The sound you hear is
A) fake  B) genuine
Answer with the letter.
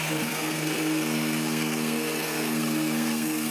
A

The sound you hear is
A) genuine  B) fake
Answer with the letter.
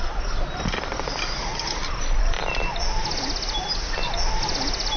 A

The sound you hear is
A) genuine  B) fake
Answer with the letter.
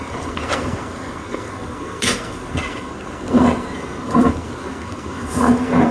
B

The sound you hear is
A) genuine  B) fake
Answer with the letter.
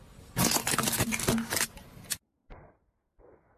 A